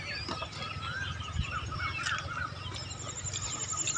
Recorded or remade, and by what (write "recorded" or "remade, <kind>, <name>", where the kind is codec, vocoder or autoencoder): recorded